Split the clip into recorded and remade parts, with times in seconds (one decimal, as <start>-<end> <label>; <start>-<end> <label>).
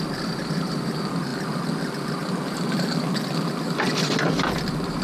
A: 0.0-5.0 recorded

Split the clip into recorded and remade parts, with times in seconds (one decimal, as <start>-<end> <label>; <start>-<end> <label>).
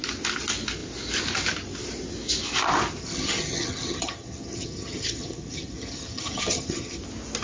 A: 0.0-3.0 recorded; 3.0-7.0 remade; 7.0-7.4 recorded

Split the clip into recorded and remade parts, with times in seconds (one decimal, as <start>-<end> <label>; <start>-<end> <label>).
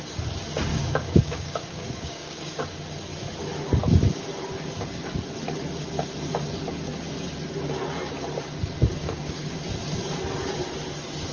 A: 0.0-0.7 recorded; 0.7-2.6 remade; 2.6-9.0 recorded; 9.0-9.6 remade; 9.6-11.3 recorded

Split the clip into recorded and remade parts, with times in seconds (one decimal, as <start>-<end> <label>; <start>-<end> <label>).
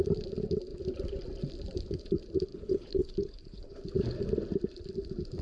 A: 0.0-2.5 recorded; 2.5-3.8 remade; 3.8-5.4 recorded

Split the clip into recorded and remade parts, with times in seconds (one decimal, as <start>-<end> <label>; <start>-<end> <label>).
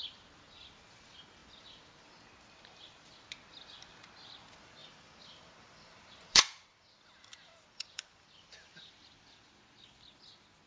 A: 0.0-4.8 recorded; 4.8-8.9 remade; 8.9-10.7 recorded